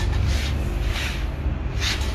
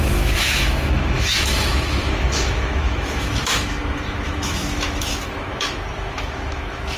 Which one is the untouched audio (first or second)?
first